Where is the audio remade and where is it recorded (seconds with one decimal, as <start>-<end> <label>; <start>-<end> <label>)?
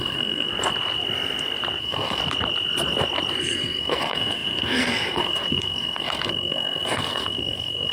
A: 0.0-0.5 remade; 0.5-1.8 recorded; 1.8-2.2 remade; 2.2-3.4 recorded; 3.4-7.9 remade